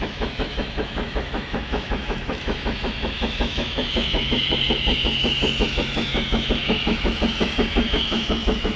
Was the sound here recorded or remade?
remade